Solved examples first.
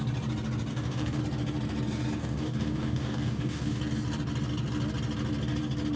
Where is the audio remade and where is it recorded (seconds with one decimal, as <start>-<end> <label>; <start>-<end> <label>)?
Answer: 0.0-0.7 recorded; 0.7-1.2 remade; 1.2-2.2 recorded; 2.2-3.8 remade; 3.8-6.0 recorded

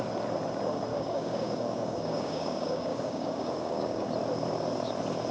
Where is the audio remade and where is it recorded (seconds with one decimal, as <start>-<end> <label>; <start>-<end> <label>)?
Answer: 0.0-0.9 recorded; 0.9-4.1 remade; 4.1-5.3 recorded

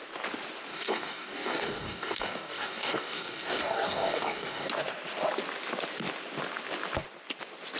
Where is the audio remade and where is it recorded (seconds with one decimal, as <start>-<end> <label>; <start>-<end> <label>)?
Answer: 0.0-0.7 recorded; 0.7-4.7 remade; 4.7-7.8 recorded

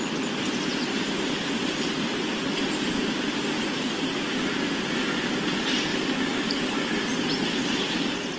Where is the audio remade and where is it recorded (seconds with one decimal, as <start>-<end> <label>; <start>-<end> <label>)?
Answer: 0.0-5.9 recorded; 5.9-6.9 remade; 6.9-8.4 recorded

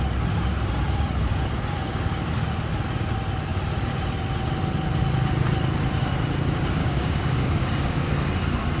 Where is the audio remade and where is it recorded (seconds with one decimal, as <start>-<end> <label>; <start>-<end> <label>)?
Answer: 0.0-6.8 recorded; 6.8-8.1 remade; 8.1-8.8 recorded

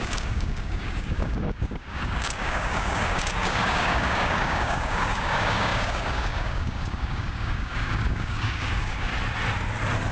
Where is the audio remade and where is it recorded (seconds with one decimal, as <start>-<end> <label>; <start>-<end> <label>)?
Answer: 0.0-9.1 remade; 9.1-10.1 recorded